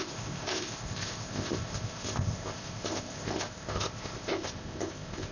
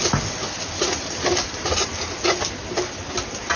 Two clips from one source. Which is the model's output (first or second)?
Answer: first